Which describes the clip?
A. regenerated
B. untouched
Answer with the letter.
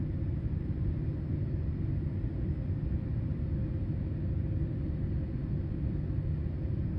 B